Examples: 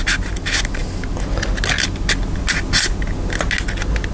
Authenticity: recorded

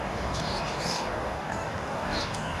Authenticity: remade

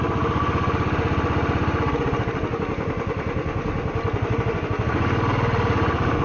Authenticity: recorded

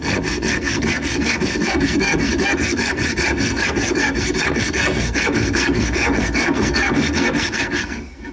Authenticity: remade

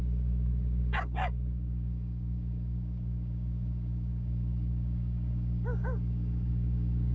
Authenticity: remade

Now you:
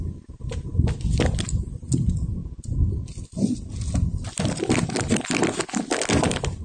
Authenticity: recorded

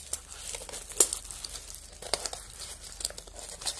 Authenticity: recorded